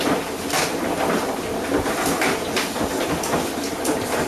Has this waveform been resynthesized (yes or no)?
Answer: no